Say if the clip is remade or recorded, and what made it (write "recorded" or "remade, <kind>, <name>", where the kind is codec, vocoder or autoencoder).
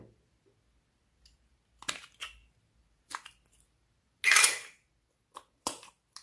recorded